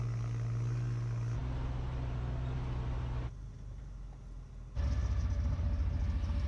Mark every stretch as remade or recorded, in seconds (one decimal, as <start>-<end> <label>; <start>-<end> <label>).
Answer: 0.0-6.5 recorded